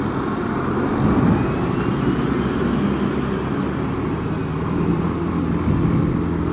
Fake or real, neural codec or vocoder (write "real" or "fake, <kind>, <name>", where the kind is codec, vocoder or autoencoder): real